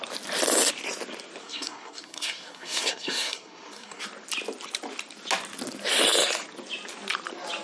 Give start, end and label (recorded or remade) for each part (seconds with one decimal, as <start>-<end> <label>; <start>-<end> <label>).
0.0-1.4 recorded; 1.4-4.0 remade; 4.0-7.6 recorded